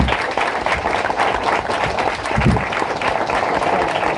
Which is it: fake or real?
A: real